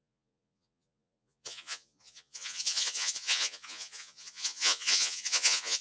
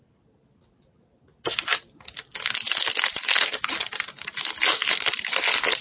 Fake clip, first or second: first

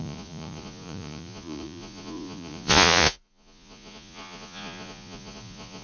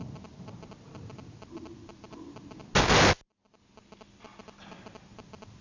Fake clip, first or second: first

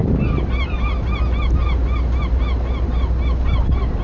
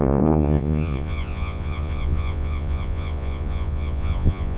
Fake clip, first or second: second